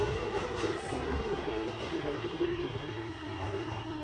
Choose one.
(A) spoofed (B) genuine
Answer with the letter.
A